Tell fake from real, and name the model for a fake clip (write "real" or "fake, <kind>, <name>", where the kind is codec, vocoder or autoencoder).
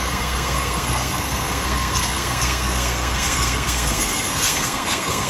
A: fake, codec, SNAC